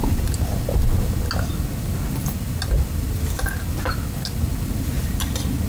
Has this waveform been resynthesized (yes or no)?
no